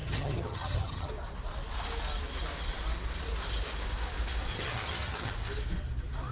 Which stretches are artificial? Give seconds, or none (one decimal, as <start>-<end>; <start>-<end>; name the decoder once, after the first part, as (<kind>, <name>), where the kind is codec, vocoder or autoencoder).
0.0-1.1 (vocoder, HiFi-GAN); 4.5-5.3